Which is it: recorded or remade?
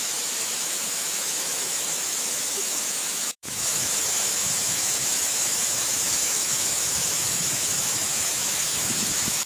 remade